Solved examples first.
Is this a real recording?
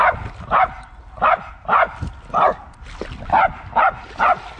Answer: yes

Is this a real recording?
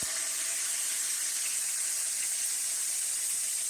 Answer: yes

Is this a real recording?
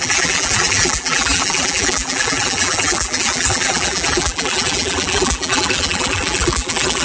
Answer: no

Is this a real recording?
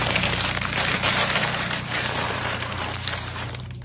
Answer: no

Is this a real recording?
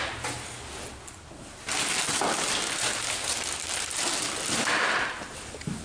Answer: yes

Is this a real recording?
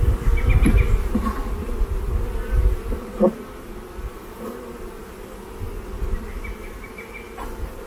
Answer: yes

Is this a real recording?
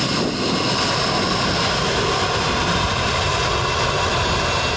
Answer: yes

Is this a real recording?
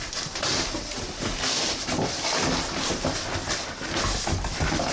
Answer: yes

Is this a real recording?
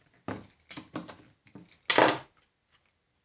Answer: yes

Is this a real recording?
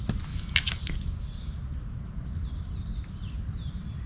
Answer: yes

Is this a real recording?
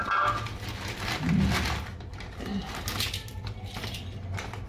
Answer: yes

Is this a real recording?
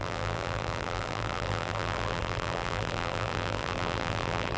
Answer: no